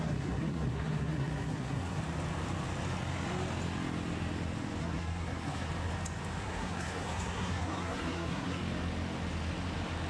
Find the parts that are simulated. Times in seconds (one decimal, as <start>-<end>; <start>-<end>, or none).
0.0-2.0; 4.8-5.7; 6.4-8.6